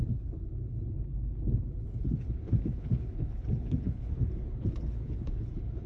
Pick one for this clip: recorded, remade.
remade